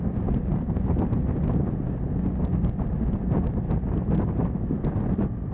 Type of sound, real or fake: real